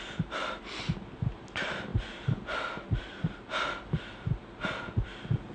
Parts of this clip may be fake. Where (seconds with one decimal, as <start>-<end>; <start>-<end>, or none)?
none